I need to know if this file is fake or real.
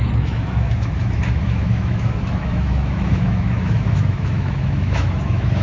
fake